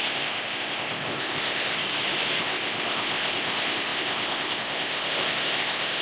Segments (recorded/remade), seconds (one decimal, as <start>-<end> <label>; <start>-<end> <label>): 0.0-1.8 remade; 1.8-2.4 recorded; 2.4-6.0 remade